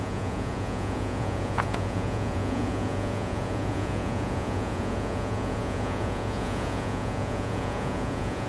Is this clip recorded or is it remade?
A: remade